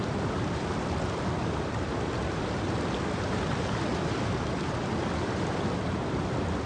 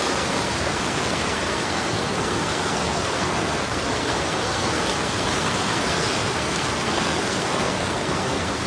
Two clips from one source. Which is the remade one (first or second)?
second